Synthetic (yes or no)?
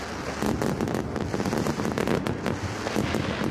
no